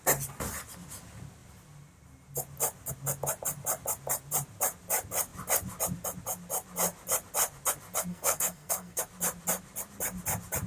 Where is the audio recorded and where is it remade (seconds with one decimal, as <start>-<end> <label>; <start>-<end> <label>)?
0.0-8.1 recorded; 8.1-9.0 remade; 9.0-10.7 recorded